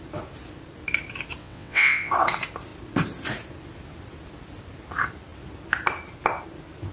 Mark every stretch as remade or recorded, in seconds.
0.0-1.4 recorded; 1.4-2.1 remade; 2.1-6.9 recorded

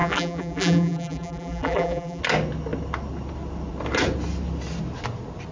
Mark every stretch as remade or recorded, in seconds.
0.0-2.2 remade; 2.2-5.5 recorded

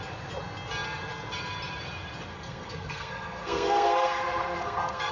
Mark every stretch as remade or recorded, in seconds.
0.0-2.3 recorded; 2.3-5.1 remade